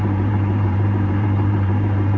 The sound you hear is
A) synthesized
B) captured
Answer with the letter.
A